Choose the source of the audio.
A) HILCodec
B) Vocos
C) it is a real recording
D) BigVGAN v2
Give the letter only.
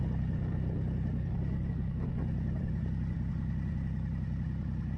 C